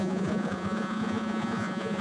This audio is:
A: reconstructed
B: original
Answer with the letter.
A